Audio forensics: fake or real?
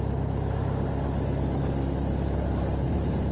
real